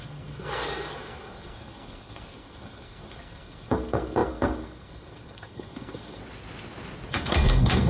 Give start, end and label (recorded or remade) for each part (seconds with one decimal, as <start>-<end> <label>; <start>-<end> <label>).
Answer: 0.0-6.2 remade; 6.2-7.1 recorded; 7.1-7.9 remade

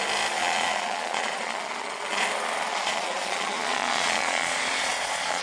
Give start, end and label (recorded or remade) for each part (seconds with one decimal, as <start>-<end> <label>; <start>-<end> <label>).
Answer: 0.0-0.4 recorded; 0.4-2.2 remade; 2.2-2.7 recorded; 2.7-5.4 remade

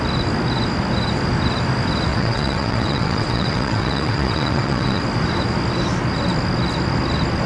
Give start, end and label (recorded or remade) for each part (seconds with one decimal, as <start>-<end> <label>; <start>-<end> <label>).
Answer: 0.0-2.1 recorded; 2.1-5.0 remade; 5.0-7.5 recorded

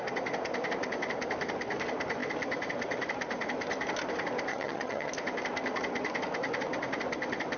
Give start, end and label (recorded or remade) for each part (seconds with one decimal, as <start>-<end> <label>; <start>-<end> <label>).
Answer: 0.0-4.5 recorded; 4.5-5.1 remade; 5.1-7.6 recorded